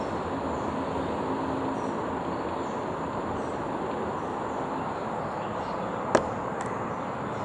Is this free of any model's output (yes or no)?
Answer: yes